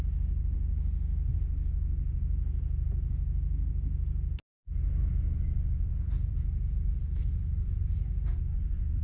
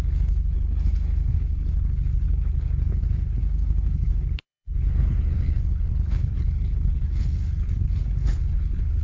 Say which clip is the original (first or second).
first